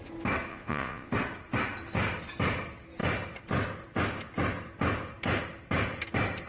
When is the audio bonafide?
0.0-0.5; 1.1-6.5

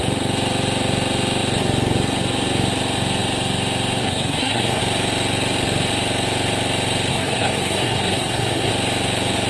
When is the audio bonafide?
0.0-4.0; 4.8-7.1; 8.7-9.5

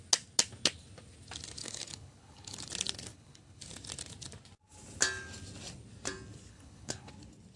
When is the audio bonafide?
0.0-1.6; 2.7-3.1; 3.6-6.5; 7.1-7.6

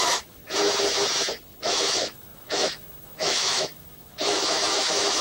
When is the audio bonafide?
0.4-1.6

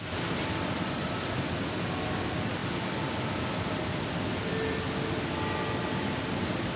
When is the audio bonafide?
0.0-6.8